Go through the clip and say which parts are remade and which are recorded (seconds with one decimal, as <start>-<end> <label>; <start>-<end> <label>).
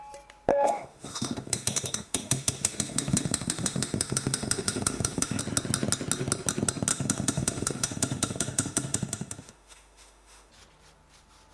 0.0-0.5 recorded; 0.5-5.4 remade; 5.4-6.9 recorded; 6.9-10.5 remade; 10.5-11.5 recorded